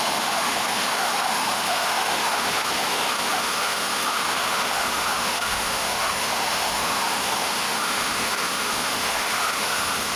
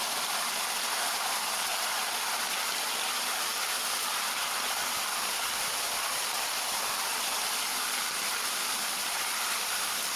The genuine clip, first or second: second